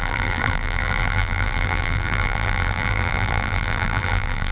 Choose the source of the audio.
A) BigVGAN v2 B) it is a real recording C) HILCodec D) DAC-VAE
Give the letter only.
A